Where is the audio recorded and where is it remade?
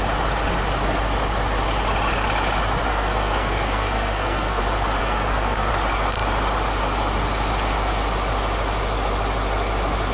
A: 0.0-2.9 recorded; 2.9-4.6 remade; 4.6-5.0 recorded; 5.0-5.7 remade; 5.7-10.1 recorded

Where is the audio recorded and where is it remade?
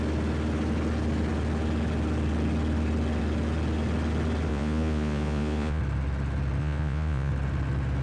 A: 0.0-4.5 recorded; 4.5-5.8 remade; 5.8-6.6 recorded; 6.6-7.3 remade; 7.3-8.0 recorded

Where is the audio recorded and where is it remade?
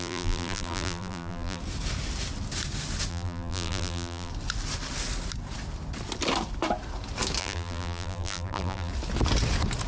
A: 0.0-1.6 remade; 1.6-3.1 recorded; 3.1-4.3 remade; 4.3-7.4 recorded; 7.4-8.9 remade; 8.9-9.9 recorded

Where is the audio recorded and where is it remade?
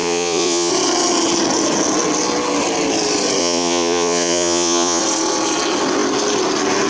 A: 0.0-0.7 remade; 0.7-3.4 recorded; 3.4-5.0 remade; 5.0-6.9 recorded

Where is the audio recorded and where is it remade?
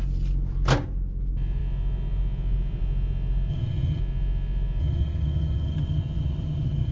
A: 0.0-3.5 recorded; 3.5-4.0 remade; 4.0-4.8 recorded; 4.8-6.9 remade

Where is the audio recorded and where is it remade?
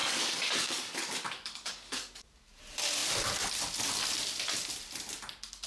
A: 0.0-2.6 remade; 2.6-5.7 recorded